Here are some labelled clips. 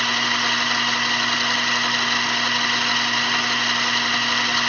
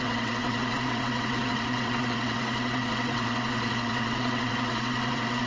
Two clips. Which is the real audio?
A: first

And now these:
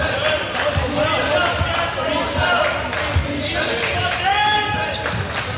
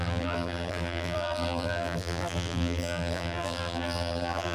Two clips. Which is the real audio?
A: first